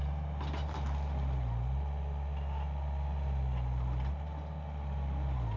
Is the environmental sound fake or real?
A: real